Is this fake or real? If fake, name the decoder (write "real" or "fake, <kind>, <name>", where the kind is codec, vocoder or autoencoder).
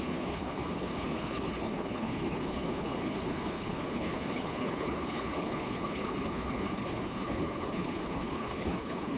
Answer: fake, codec, HILCodec